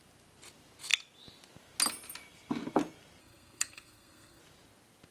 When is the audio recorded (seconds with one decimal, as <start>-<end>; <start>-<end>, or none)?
0.0-3.2; 4.4-5.1